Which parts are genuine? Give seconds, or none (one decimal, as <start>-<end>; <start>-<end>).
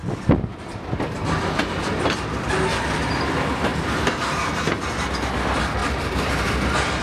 0.0-3.7; 4.6-5.8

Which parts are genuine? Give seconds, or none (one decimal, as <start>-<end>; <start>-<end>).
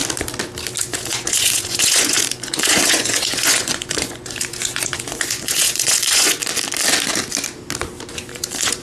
0.0-0.8; 6.4-8.1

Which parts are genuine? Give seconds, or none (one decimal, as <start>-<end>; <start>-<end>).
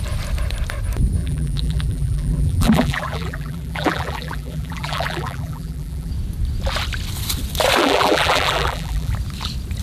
0.0-1.2; 6.1-7.8; 9.1-9.8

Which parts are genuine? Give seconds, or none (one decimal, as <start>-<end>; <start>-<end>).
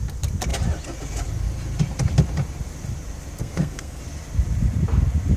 0.0-3.4; 4.0-5.4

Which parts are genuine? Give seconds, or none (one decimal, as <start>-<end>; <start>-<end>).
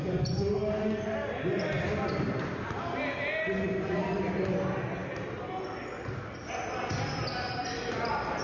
0.0-8.4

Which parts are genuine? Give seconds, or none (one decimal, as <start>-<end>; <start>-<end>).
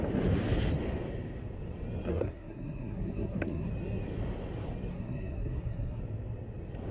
0.0-2.1; 3.7-4.9; 6.0-6.9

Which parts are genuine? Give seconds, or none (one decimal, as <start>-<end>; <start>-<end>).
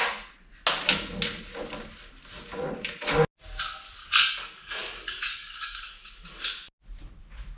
0.0-4.0; 6.4-7.6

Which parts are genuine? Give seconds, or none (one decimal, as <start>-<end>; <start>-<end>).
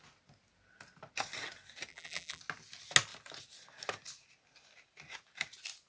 0.0-1.9; 2.4-5.9